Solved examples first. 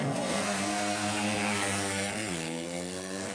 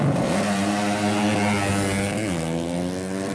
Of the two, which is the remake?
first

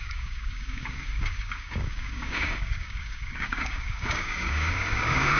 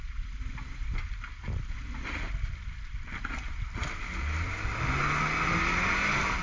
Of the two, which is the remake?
first